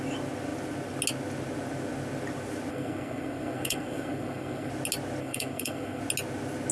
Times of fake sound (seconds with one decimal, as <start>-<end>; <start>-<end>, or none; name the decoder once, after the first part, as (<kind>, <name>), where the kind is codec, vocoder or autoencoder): 2.7-4.7 (codec, SNAC); 5.2-6.0